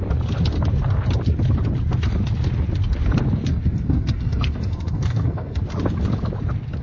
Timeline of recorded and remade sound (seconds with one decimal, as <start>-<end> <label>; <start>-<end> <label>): 0.0-3.5 recorded; 3.5-5.6 remade; 5.6-6.8 recorded

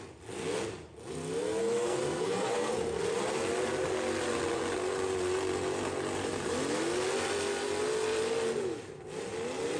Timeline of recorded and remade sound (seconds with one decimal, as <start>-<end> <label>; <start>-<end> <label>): 0.0-1.6 recorded; 1.6-2.7 remade; 2.7-9.8 recorded

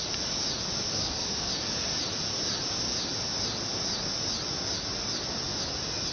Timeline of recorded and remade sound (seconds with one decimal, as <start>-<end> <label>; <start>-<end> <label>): 0.0-0.9 recorded; 0.9-1.5 remade; 1.5-6.1 recorded

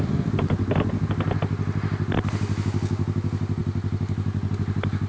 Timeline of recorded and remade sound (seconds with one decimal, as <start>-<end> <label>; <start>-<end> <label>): 0.0-5.1 recorded

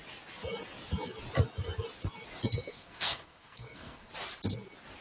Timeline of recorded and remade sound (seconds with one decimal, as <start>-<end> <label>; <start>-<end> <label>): 0.0-2.7 recorded; 2.7-4.1 remade; 4.1-5.0 recorded